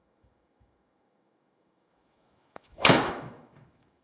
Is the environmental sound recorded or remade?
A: remade